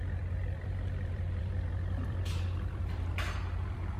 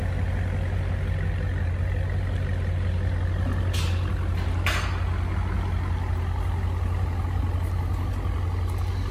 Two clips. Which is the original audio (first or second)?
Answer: second